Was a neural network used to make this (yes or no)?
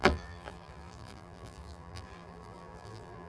yes